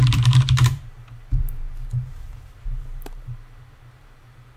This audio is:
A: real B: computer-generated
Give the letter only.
B